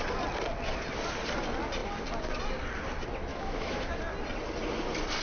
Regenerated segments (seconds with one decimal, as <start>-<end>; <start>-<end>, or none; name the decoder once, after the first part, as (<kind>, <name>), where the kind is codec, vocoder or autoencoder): 3.3-3.9 (autoencoder, DAC-VAE)